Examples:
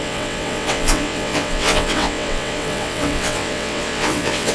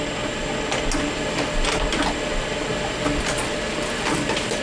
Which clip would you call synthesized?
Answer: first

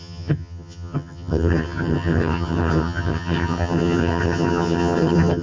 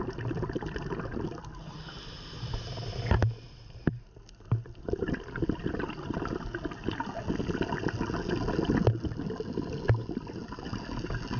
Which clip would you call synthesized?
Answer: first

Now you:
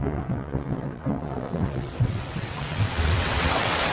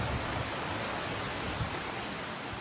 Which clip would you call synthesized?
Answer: first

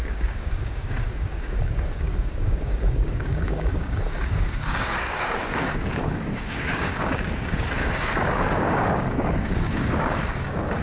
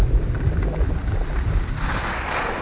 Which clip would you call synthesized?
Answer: first